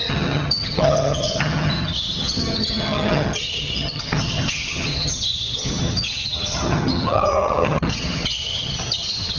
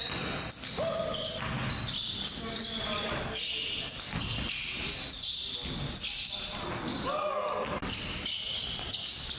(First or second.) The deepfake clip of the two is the first